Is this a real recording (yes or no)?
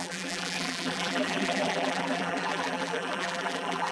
no